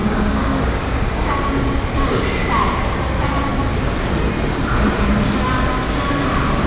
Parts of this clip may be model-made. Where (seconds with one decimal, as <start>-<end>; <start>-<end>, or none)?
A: 0.0-1.4